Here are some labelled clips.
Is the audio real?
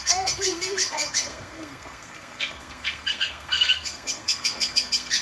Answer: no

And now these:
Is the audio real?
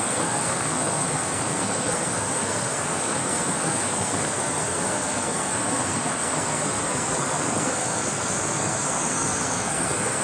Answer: no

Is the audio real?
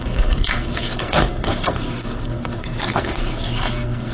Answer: no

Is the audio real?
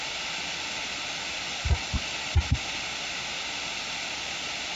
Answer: yes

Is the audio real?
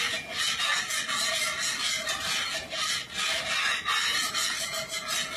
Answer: yes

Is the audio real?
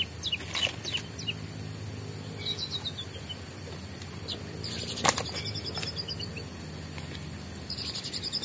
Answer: yes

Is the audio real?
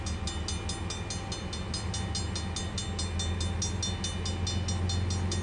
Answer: yes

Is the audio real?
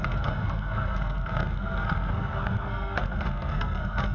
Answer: no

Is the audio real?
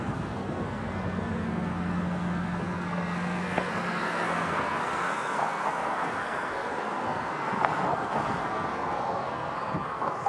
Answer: no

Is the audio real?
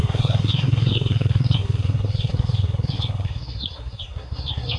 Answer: no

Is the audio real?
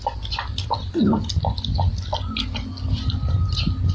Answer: yes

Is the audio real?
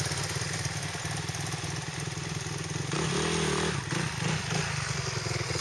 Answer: yes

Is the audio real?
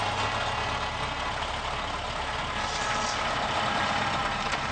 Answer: yes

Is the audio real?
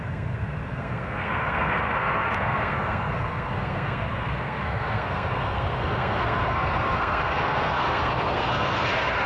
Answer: no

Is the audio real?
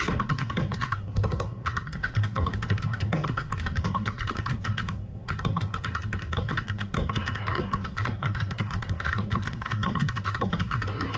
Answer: no